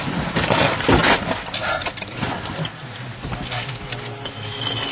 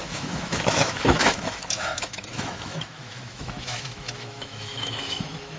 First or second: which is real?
first